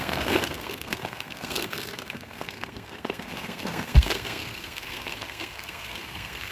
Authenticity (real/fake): fake